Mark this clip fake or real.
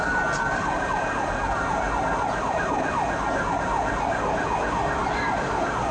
real